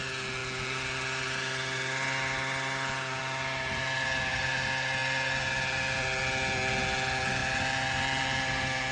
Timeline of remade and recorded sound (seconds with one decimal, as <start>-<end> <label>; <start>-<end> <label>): 0.0-8.9 recorded